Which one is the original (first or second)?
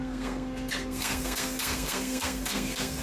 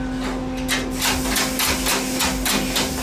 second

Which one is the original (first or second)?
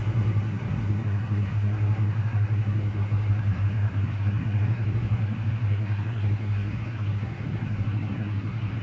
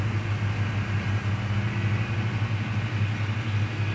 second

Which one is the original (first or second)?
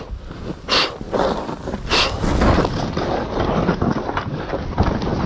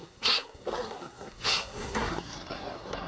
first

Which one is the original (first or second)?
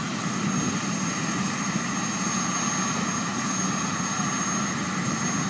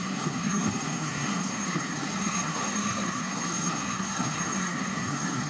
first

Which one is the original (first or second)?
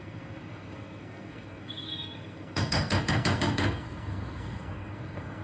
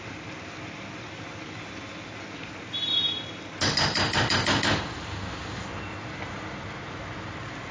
second